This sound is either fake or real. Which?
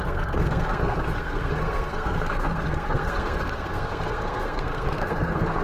fake